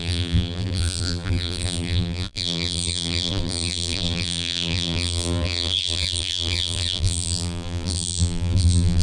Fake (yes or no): yes